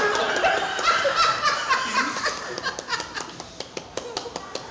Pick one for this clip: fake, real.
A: real